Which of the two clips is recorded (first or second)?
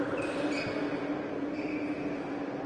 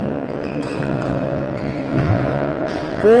first